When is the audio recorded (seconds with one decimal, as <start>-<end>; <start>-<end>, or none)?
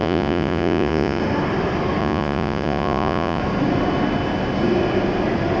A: 1.2-2.0; 3.4-5.6